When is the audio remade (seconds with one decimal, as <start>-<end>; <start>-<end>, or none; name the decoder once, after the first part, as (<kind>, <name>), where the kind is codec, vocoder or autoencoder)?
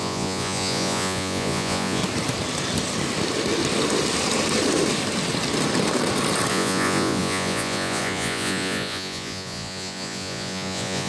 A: 0.0-2.0 (vocoder, Vocos); 6.5-11.1